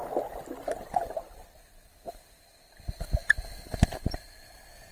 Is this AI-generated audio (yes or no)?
no